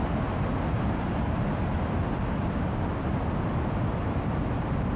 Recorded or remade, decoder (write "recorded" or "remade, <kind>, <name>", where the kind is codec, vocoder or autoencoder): recorded